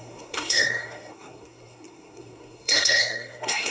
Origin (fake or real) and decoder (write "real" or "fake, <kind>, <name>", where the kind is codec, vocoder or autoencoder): fake, codec, SNAC